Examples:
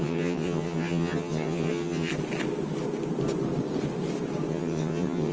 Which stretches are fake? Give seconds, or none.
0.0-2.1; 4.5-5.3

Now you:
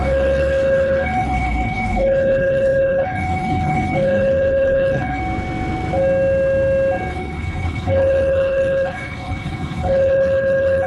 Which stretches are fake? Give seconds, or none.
0.0-5.2; 7.1-10.9

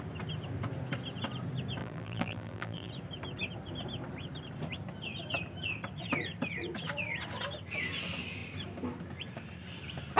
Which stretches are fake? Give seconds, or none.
1.8-2.9

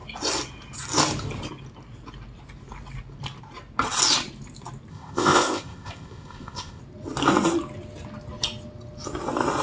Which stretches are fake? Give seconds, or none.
4.9-6.8

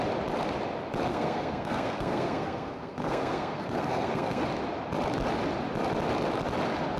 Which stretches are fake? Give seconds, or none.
1.1-4.4

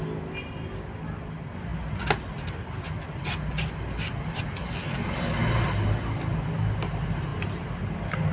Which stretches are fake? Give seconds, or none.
none

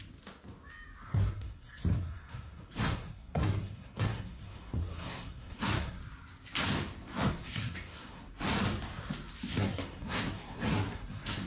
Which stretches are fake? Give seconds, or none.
1.1-6.0; 7.3-8.2; 9.5-11.5